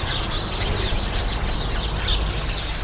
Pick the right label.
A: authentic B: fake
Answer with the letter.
A